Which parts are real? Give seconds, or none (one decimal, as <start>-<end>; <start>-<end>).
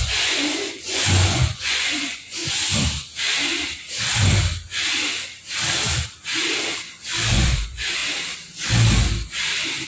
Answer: 2.4-7.3; 8.0-9.9